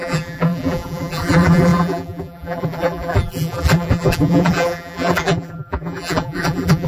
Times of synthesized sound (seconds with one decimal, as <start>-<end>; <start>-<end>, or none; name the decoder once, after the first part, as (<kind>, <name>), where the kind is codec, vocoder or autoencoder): 0.0-6.9 (vocoder, BigVGAN v2)